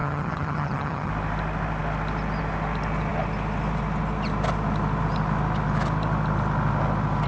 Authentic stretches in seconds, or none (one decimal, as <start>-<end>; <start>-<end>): 1.1-7.3

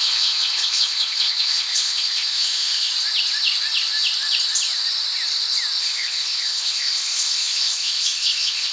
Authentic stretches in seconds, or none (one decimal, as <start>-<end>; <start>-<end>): 2.9-5.8

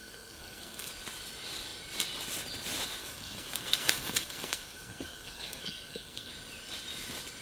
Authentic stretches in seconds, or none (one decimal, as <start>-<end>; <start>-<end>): 0.9-3.0; 6.3-7.4

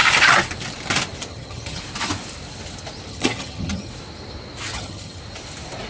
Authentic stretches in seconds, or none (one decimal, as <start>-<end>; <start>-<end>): 0.0-1.3; 1.8-3.1; 3.9-4.7; 5.2-5.9

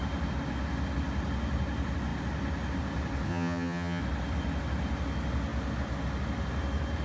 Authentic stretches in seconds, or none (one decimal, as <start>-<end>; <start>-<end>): 0.0-3.3; 4.0-7.0

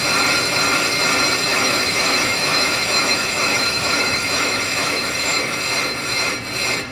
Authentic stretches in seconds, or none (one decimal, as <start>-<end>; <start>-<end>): 0.0-1.5; 5.6-6.9

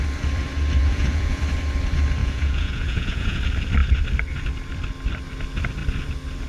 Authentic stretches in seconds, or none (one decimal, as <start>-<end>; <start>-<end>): 0.0-0.8; 1.4-2.2; 3.4-6.5